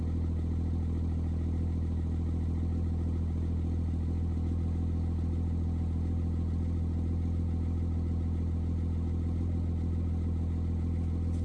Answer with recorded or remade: recorded